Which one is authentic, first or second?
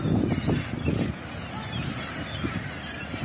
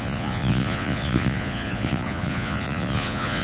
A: first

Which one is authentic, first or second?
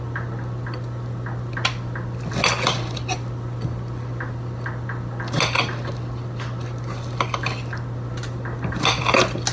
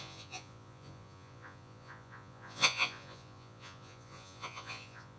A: first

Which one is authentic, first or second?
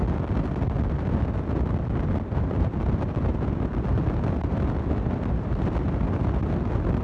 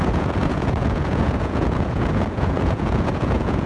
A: first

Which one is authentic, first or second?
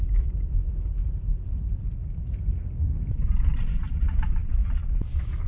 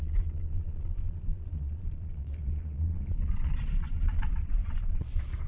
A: first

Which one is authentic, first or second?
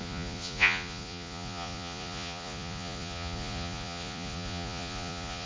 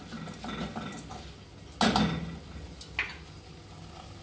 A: second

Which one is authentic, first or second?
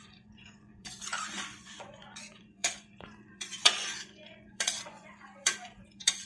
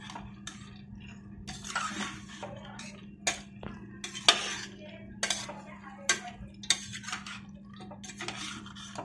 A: second